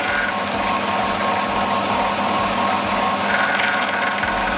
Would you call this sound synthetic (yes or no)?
no